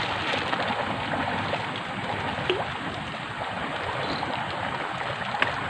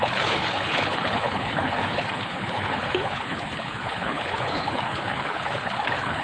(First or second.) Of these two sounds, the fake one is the second